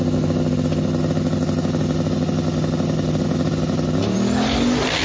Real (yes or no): yes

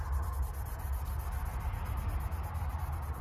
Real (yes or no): yes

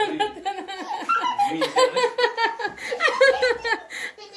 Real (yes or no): yes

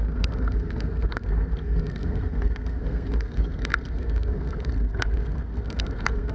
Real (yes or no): no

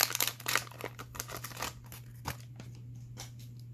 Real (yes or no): yes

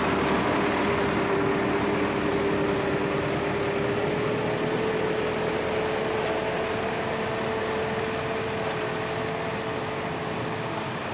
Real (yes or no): yes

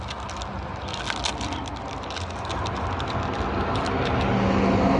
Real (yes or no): yes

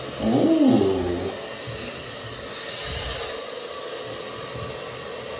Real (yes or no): yes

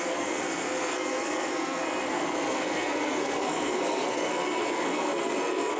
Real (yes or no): no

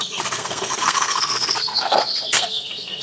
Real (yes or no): no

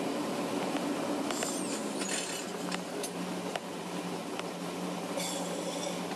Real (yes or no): yes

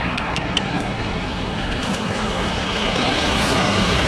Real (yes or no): no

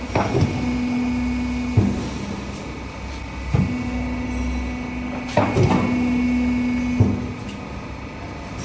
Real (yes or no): yes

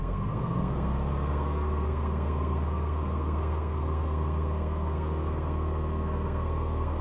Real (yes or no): no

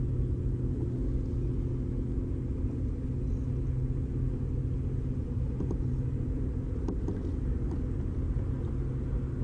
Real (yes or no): yes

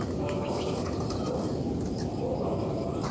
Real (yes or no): yes